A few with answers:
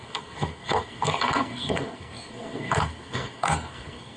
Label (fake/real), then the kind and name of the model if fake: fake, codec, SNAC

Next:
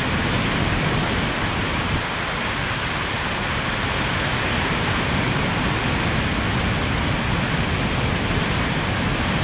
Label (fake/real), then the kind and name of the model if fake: real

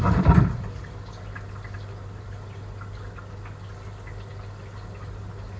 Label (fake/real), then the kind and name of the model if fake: real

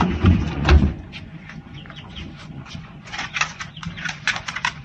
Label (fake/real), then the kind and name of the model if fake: fake, vocoder, Vocos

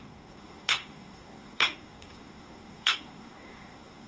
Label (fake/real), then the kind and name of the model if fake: fake, codec, SNAC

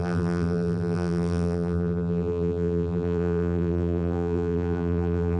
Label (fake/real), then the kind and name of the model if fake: fake, vocoder, BigVGAN v2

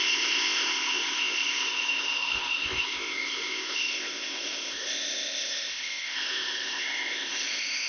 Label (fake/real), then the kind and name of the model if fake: fake, codec, ZipCodec